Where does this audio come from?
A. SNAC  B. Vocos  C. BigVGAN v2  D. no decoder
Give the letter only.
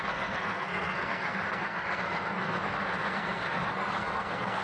A